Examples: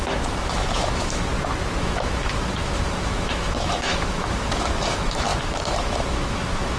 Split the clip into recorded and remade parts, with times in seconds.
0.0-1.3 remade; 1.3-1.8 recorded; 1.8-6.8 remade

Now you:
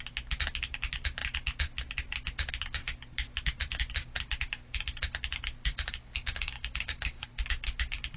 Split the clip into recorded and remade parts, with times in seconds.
0.0-5.7 recorded; 5.7-7.3 remade; 7.3-8.2 recorded

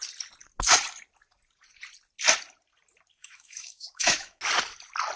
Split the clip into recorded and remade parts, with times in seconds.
0.0-3.2 recorded; 3.2-4.4 remade; 4.4-5.2 recorded

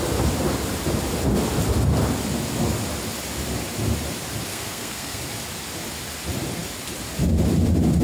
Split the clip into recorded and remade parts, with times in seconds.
0.0-4.5 recorded; 4.5-5.2 remade; 5.2-8.0 recorded